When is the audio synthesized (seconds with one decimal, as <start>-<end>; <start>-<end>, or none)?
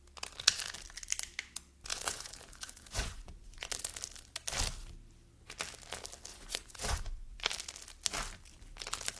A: 1.9-3.7; 6.3-7.5